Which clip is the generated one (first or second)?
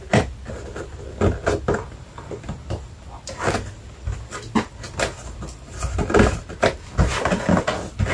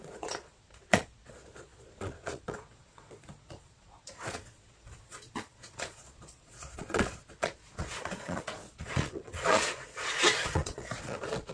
second